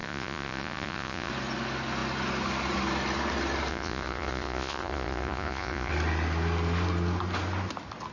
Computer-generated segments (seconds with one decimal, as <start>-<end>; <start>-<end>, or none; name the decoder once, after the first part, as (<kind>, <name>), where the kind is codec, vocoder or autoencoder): 0.0-1.3 (vocoder, Vocos); 3.7-5.9